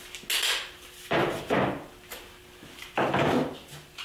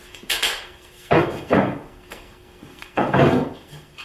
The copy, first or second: second